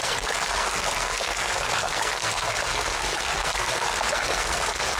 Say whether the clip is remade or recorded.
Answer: remade